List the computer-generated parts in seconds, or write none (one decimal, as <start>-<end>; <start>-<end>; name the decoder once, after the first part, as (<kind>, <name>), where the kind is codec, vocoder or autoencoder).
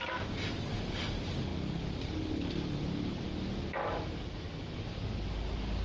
3.8-4.8 (autoencoder, DAC-VAE)